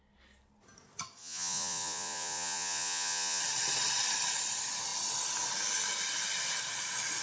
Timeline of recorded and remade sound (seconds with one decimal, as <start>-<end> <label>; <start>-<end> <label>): 0.0-1.2 recorded; 1.2-3.4 remade; 3.4-7.2 recorded